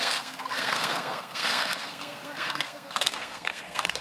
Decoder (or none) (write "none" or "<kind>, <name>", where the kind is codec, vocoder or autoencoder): codec, SNAC